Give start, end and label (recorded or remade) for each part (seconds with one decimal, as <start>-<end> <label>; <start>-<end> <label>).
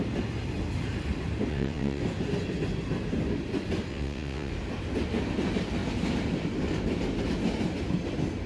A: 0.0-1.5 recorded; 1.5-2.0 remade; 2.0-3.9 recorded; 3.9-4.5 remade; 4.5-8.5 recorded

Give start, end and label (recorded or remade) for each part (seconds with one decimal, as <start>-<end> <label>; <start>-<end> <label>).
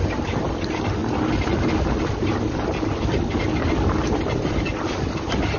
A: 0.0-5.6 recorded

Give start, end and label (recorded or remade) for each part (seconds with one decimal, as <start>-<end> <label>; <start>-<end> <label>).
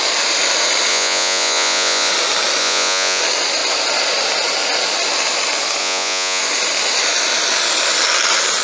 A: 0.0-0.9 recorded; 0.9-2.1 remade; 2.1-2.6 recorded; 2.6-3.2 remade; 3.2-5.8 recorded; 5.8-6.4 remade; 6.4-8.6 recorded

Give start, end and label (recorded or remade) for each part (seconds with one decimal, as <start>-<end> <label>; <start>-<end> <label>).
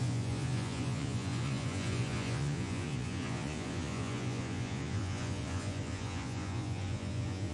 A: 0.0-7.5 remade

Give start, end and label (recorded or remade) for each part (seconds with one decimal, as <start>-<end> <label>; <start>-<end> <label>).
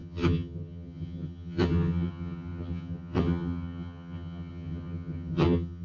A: 0.0-5.8 remade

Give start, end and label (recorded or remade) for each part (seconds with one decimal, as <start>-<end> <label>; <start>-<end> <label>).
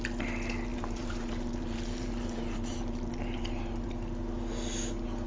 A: 0.0-0.7 recorded; 0.7-3.9 remade; 3.9-5.3 recorded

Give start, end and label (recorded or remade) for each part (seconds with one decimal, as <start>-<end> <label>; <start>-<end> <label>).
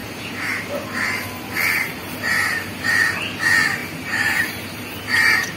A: 0.0-0.8 remade; 0.8-2.0 recorded; 2.0-3.0 remade; 3.0-3.8 recorded; 3.8-5.6 remade